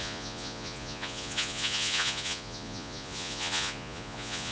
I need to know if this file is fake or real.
fake